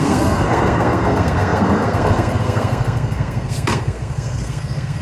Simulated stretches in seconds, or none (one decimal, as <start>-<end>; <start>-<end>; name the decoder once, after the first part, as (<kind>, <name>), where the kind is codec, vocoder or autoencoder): 0.0-5.0 (codec, SNAC)